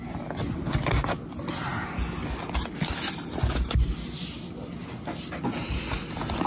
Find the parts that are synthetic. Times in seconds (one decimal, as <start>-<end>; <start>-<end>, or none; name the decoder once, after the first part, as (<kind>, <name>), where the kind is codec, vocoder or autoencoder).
none